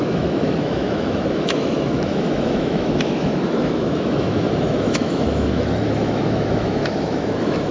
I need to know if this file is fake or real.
fake